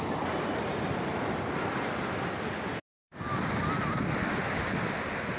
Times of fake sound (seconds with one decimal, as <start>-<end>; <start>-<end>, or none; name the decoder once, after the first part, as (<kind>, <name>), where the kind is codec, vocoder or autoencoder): none